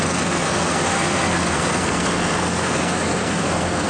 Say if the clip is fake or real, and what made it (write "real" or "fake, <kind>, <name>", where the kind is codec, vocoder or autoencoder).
fake, codec, SNAC